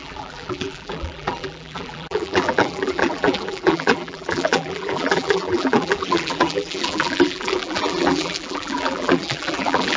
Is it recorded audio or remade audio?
remade